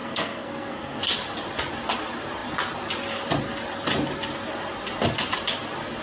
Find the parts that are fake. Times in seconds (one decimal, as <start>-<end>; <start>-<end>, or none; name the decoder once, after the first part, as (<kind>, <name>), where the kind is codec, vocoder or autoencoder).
0.0-1.0 (codec, SNAC)